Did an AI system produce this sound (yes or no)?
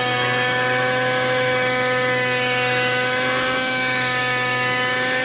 yes